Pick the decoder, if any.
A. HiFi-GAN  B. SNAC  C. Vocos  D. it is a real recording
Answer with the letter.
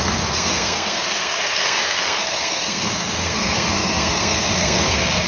B